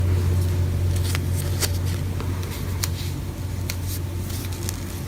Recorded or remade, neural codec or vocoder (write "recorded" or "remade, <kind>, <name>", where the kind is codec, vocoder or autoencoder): recorded